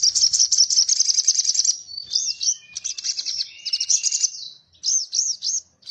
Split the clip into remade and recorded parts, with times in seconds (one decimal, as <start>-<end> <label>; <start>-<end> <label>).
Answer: 0.0-5.9 recorded